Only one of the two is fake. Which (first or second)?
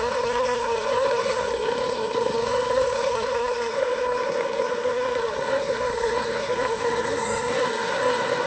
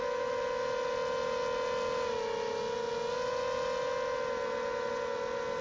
first